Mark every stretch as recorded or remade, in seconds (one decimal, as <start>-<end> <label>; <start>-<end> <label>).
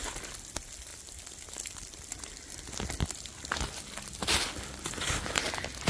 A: 0.0-5.9 recorded